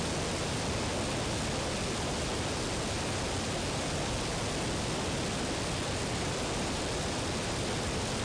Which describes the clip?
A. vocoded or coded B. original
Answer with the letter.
B